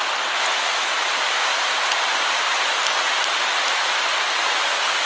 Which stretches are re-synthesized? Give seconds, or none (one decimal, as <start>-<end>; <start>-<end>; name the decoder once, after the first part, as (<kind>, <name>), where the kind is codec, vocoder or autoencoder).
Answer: 0.5-1.1 (vocoder, BigVGAN v2); 1.5-4.6